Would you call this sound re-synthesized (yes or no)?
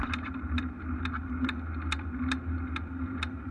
no